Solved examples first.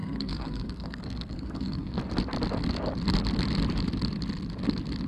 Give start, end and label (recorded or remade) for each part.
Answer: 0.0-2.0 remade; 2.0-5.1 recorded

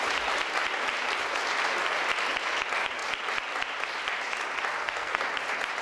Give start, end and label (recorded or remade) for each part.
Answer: 0.0-4.7 recorded; 4.7-5.2 remade; 5.2-5.8 recorded

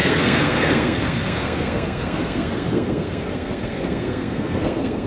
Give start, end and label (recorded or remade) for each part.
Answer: 0.0-5.1 remade

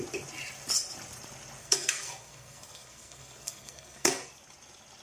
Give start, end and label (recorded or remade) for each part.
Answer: 0.0-1.6 recorded; 1.6-4.3 remade; 4.3-5.0 recorded

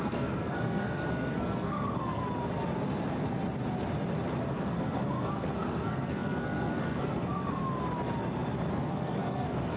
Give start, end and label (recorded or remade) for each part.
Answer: 0.0-2.2 remade; 2.2-4.5 recorded; 4.5-7.6 remade; 7.6-8.7 recorded; 8.7-9.8 remade

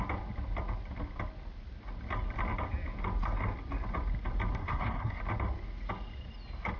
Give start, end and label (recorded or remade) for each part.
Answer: 0.0-4.6 recorded; 4.6-5.2 remade; 5.2-6.8 recorded